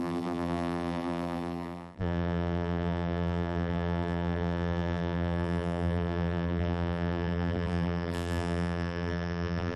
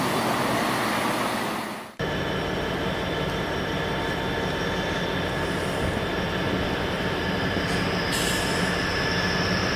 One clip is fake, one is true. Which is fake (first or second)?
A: first